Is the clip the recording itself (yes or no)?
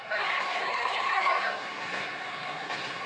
no